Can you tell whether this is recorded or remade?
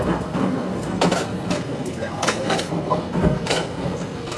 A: remade